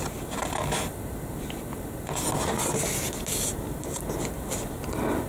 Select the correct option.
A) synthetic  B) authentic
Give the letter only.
B